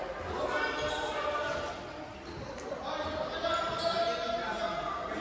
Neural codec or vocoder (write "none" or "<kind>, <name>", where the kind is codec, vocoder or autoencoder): none